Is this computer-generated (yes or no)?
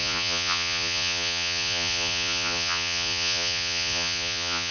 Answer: yes